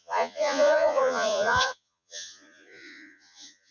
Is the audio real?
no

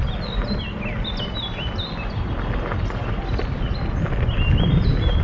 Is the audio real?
yes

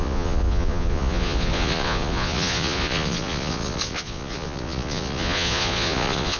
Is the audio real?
no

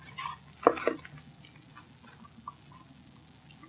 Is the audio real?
yes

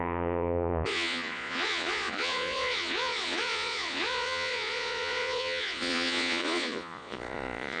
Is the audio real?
no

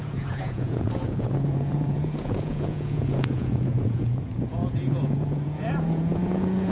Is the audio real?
no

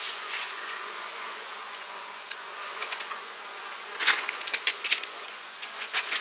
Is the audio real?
no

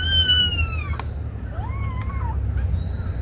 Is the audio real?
yes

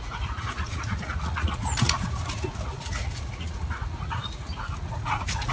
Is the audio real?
no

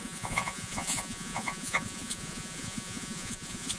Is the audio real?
no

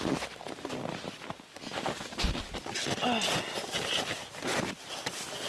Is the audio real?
yes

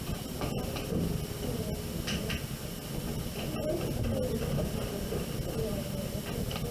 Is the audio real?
yes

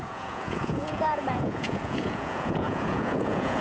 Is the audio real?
no